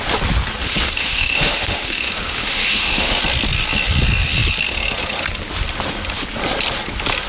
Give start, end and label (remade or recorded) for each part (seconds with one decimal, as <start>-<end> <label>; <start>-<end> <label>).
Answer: 0.0-0.6 recorded; 0.6-3.2 remade; 3.2-7.3 recorded